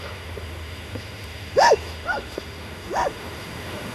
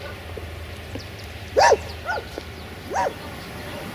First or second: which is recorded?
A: second